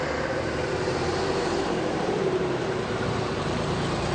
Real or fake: fake